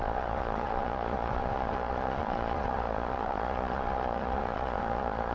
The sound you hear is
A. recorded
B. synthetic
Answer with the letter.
B